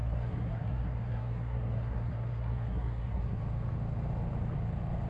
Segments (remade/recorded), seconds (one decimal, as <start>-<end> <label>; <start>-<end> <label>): 0.0-3.4 remade; 3.4-5.1 recorded

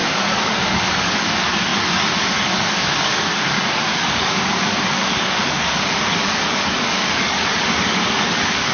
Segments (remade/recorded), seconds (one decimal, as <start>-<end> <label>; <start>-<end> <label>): 0.0-8.7 remade

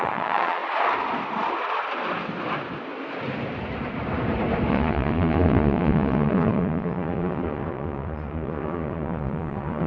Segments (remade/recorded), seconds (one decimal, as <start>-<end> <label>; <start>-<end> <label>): 0.0-0.6 remade; 0.6-4.7 recorded; 4.7-9.9 remade

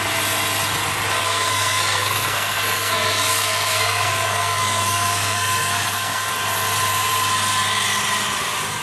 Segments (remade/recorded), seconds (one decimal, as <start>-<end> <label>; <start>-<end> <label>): 0.0-1.2 recorded; 1.2-6.3 remade; 6.3-8.8 recorded

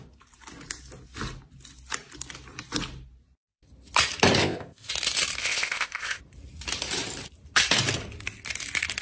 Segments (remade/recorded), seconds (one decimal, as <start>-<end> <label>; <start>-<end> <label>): 0.0-4.4 recorded; 4.4-4.9 remade; 4.9-5.4 recorded; 5.4-6.2 remade; 6.2-9.0 recorded